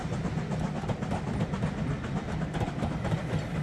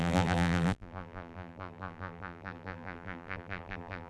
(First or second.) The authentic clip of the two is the first